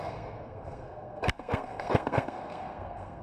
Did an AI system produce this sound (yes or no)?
yes